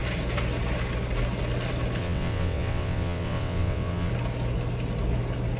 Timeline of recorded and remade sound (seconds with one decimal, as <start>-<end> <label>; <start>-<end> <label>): 0.0-2.0 recorded; 2.0-4.1 remade; 4.1-5.6 recorded